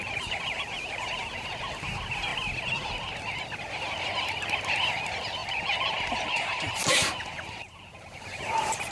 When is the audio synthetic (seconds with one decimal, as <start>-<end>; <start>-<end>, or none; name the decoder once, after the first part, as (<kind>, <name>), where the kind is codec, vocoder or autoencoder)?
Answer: 0.0-1.3 (vocoder, BigVGAN v2); 5.4-8.9